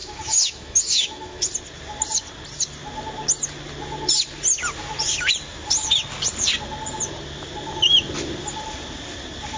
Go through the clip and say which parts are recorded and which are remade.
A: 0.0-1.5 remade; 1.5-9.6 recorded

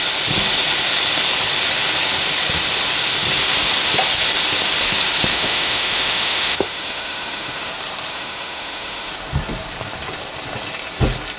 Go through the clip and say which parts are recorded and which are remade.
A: 0.0-5.3 recorded; 5.3-7.7 remade; 7.7-8.1 recorded; 8.1-9.1 remade; 9.1-11.4 recorded

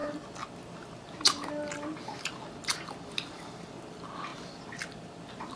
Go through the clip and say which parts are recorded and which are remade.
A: 0.0-5.6 recorded

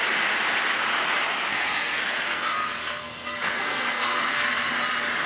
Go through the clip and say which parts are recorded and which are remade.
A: 0.0-1.5 recorded; 1.5-4.7 remade; 4.7-5.3 recorded